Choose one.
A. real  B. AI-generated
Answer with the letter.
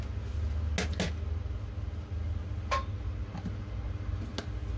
A